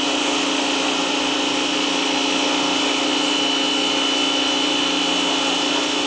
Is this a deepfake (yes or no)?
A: no